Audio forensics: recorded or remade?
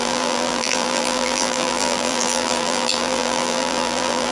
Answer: remade